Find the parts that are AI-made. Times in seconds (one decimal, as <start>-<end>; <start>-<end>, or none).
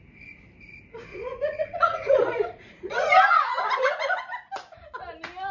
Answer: 1.1-4.2